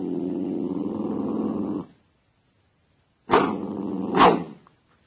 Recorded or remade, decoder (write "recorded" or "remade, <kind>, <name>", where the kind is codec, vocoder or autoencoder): recorded